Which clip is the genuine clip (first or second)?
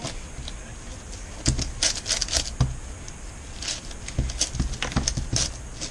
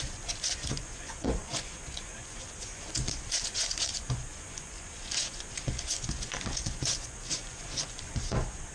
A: first